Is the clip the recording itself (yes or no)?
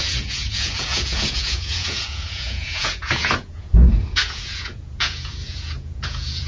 no